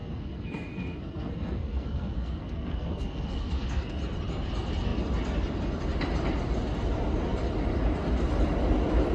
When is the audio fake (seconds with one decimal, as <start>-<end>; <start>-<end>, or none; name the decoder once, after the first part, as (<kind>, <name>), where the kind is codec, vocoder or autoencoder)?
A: 0.0-3.9 (codec, SNAC)